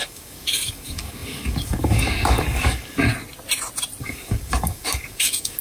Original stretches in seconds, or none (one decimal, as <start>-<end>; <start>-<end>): 3.1-4.0